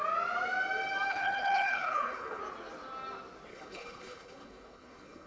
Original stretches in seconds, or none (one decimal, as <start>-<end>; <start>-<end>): 0.0-1.1; 2.4-3.5